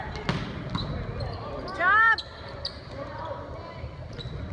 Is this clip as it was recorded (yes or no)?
yes